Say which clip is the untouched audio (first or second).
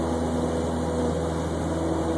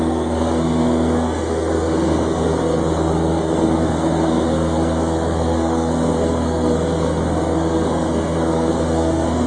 first